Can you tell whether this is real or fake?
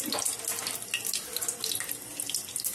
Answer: real